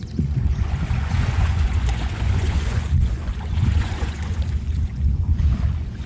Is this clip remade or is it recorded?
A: remade